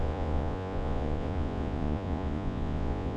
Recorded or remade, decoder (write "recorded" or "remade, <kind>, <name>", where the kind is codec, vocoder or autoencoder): remade, vocoder, Vocos